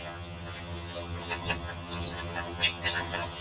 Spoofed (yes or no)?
yes